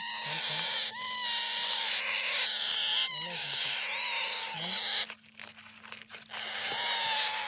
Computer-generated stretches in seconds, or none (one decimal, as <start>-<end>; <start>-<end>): none